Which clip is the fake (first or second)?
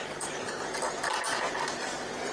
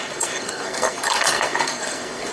second